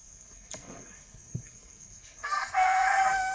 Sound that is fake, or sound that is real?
fake